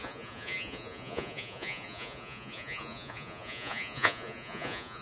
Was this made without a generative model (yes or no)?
no